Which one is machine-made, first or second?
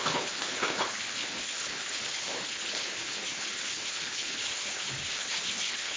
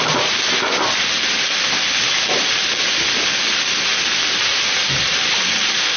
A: first